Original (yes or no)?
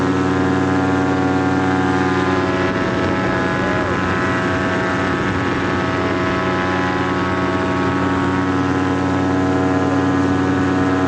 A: yes